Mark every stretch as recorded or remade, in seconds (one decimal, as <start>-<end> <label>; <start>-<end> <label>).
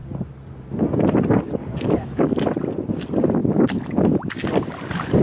0.0-1.6 recorded; 1.6-2.2 remade; 2.2-5.2 recorded